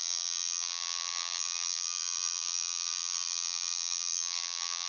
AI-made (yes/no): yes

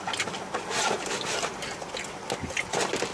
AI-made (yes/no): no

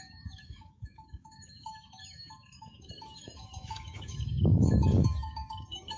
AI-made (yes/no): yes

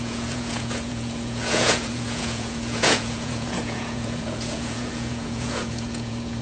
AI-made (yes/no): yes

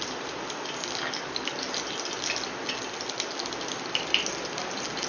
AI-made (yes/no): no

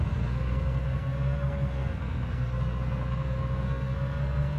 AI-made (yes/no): yes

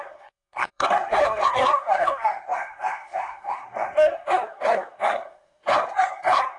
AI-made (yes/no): yes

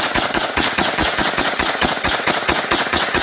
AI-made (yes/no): yes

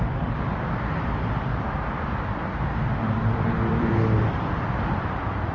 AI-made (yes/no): yes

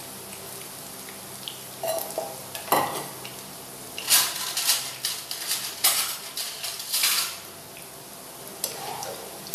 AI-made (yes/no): no